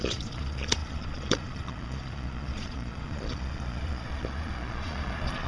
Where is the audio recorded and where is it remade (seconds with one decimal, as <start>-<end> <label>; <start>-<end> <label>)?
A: 0.0-5.5 remade